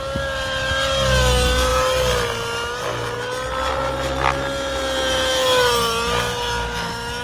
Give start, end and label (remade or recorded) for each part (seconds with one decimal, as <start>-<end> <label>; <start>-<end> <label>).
0.0-7.2 recorded